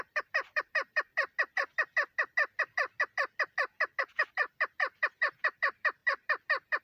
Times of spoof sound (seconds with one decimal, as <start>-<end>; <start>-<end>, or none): 0.0-1.1; 4.0-6.0